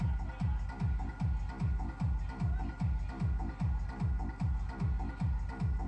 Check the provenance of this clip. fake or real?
real